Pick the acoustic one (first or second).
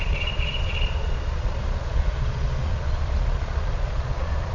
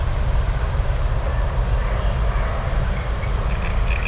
second